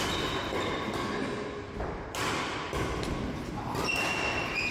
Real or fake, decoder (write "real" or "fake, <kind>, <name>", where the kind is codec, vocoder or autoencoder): real